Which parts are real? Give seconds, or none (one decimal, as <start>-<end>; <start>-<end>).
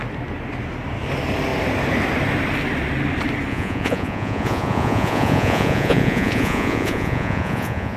0.0-3.5